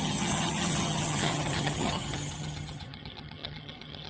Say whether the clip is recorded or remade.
remade